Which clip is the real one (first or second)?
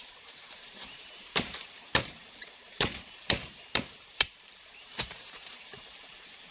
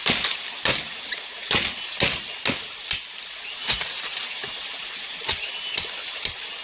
second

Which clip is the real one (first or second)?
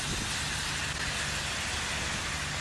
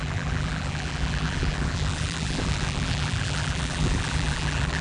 first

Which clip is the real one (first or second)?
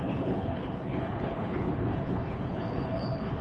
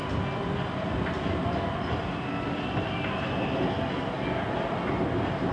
second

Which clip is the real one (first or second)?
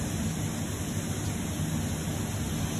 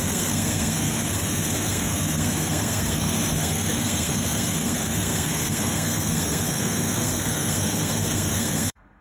first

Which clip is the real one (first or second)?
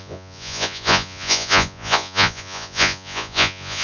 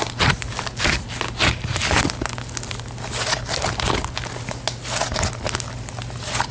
second